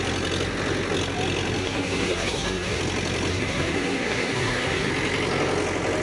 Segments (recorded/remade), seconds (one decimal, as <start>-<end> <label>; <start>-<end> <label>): 0.0-1.6 recorded; 1.6-2.8 remade; 2.8-3.3 recorded; 3.3-4.9 remade; 4.9-6.0 recorded